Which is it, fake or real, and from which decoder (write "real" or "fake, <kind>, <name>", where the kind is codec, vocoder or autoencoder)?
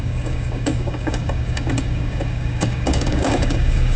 fake, codec, DAC